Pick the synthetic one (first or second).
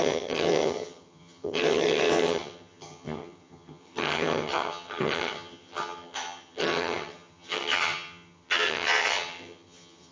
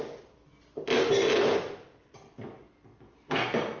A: first